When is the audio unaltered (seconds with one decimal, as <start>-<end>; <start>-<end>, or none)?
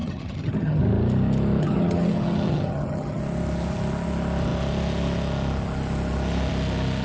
0.8-1.6; 3.2-7.0